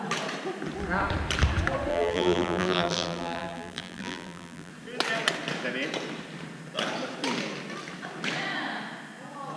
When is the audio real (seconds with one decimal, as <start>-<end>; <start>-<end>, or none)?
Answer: 0.0-1.9; 4.7-9.6